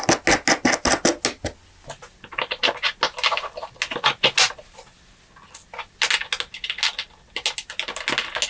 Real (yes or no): yes